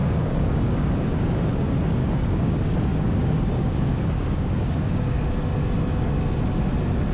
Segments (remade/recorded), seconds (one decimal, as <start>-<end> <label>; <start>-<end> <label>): 0.0-1.5 remade; 1.5-2.0 recorded; 2.0-2.5 remade; 2.5-2.9 recorded; 2.9-5.2 remade; 5.2-7.1 recorded